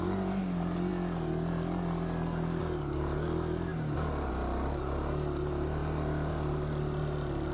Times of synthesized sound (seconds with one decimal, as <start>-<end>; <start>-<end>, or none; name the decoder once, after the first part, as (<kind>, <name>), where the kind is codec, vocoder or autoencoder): none